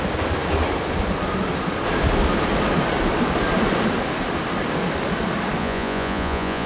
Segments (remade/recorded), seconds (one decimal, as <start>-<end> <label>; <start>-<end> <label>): 0.0-5.6 recorded; 5.6-6.7 remade